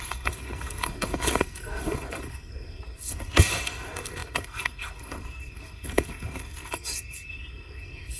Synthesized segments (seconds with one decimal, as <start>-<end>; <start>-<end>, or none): 0.0-8.2